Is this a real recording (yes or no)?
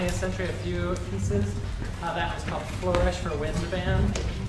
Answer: yes